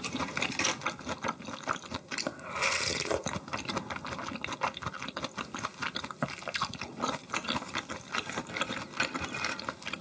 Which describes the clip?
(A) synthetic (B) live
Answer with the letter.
B